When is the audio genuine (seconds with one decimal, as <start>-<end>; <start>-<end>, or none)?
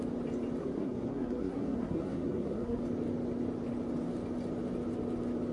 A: 0.0-0.6; 2.8-5.5